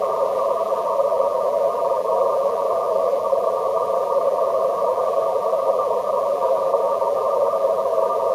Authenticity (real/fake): fake